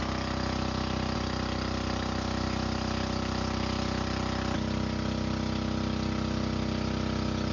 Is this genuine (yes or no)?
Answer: yes